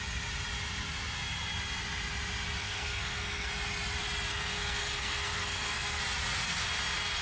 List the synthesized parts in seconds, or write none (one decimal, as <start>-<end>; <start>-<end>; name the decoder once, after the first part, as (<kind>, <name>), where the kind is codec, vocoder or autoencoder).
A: 2.6-3.5 (codec, SNAC); 4.3-6.0

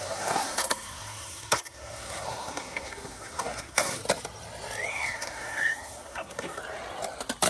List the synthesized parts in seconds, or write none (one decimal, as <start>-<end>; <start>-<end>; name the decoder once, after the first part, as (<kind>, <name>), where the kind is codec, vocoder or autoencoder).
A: 0.0-4.0 (codec, SNAC); 4.9-6.6

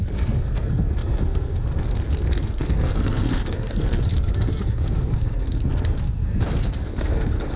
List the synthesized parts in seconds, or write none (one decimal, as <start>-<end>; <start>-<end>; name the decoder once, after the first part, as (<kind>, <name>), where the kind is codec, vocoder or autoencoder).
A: 0.0-7.6 (codec, SNAC)

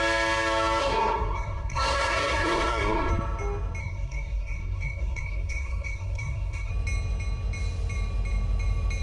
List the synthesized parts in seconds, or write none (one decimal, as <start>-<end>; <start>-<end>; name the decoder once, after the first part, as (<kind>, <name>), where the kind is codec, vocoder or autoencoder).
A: 0.8-3.1 (codec, SNAC); 3.8-6.7

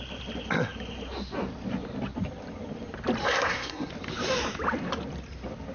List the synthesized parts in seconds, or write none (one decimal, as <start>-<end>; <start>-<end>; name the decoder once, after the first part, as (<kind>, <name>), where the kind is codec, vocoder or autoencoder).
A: 3.2-3.9 (codec, SNAC)